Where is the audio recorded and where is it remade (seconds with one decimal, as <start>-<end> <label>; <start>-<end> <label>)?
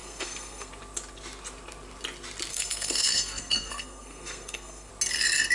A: 0.0-0.7 remade; 0.7-2.5 recorded; 2.5-4.9 remade; 4.9-5.5 recorded